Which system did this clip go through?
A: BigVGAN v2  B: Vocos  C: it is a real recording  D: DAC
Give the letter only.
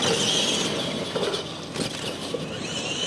C